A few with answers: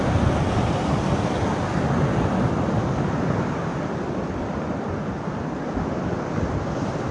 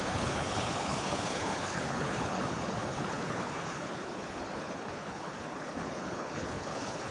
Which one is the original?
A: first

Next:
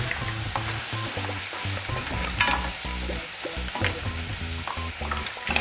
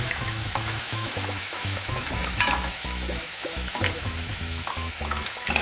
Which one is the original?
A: first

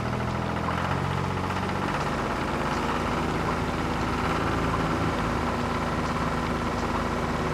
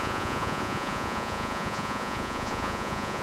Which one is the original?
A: first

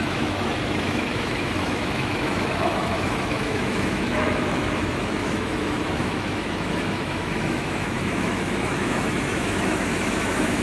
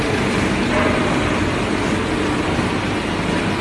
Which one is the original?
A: second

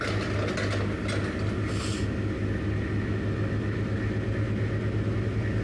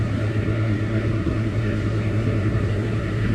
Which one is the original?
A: first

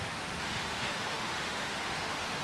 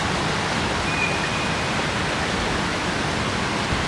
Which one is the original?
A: second